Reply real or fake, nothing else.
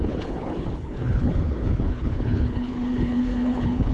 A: fake